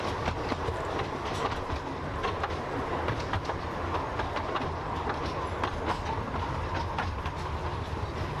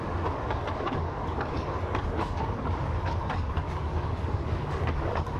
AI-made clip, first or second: second